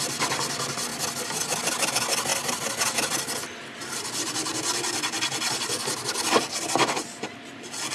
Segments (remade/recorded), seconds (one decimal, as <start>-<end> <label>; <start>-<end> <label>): 0.0-7.9 recorded